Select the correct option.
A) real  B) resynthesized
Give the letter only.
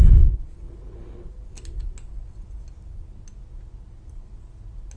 A